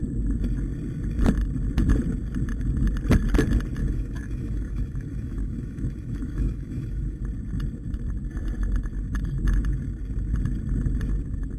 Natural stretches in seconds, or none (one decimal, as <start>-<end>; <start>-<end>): 0.0-3.8; 7.2-11.6